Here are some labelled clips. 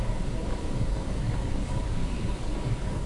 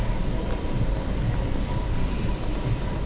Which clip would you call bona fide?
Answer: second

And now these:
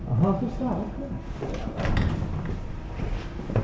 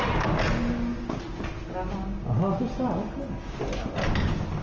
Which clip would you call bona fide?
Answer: second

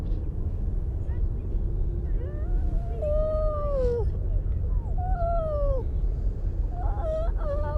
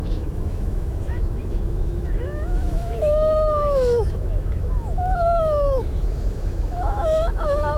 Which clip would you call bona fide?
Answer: first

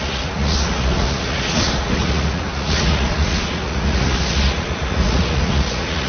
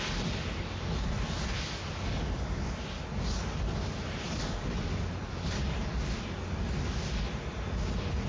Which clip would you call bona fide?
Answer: second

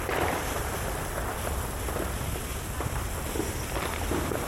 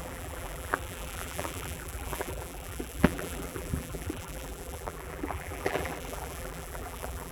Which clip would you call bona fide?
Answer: first